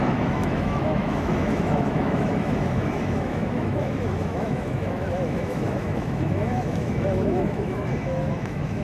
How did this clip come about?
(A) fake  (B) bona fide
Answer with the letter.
A